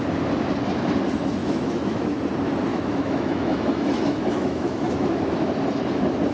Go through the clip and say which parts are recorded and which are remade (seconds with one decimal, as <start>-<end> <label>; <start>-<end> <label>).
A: 0.0-1.4 recorded; 1.4-2.2 remade; 2.2-2.7 recorded; 2.7-5.5 remade; 5.5-6.3 recorded